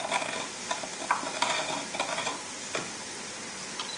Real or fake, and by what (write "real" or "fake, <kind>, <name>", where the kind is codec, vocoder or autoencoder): real